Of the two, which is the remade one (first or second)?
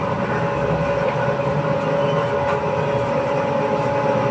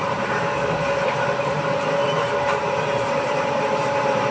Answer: second